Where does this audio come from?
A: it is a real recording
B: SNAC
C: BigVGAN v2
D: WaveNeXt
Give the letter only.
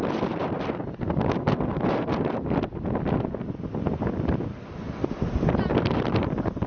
C